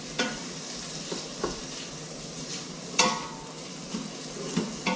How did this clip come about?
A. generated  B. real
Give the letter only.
B